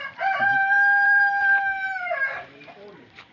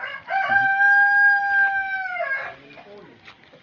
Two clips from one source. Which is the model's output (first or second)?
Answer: first